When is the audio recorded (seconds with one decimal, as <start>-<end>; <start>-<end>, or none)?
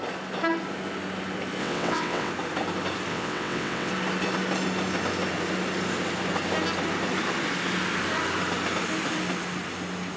0.0-1.6; 2.3-3.1; 3.9-10.2